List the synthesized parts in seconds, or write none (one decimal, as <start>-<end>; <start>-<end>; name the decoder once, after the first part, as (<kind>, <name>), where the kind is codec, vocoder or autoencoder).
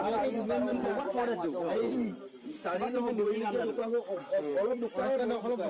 0.7-2.3 (vocoder, BigVGAN v2); 3.2-3.9